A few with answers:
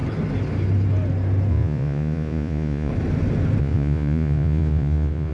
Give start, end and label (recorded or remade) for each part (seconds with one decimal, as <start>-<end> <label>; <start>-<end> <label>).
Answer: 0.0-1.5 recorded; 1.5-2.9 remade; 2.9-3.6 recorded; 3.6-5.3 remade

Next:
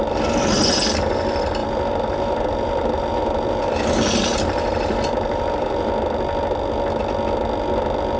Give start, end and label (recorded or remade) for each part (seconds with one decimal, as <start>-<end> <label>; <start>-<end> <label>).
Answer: 0.0-1.6 recorded; 1.6-3.6 remade; 3.6-4.3 recorded; 4.3-5.9 remade; 5.9-8.2 recorded

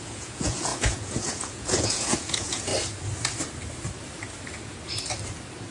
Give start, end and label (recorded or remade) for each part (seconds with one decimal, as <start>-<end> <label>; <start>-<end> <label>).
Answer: 0.0-2.7 remade; 2.7-5.7 recorded

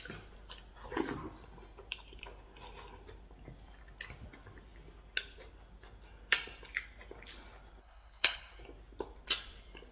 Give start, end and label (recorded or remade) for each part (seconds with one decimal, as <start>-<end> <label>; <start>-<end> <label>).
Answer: 0.0-7.8 recorded; 7.8-8.6 remade; 8.6-9.9 recorded

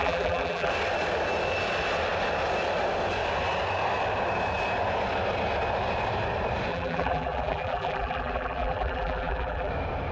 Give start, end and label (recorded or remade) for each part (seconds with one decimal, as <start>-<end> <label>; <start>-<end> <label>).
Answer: 0.0-0.7 remade; 0.7-6.7 recorded; 6.7-9.7 remade; 9.7-10.1 recorded